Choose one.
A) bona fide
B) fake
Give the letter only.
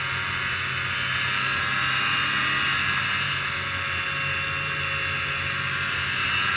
A